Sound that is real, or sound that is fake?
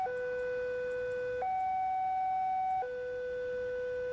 real